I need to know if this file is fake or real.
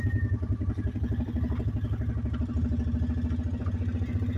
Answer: real